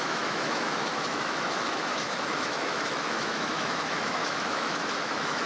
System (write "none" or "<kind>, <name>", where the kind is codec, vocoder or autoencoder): autoencoder, DAC-VAE